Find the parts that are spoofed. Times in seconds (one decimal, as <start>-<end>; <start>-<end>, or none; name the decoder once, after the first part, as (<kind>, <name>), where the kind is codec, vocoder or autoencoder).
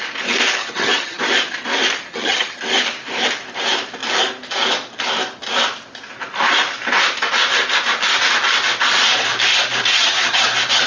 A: 0.6-1.2 (vocoder, HiFi-GAN); 2.1-2.6; 9.9-10.4